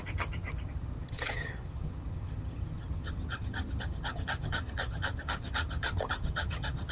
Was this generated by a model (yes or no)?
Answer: yes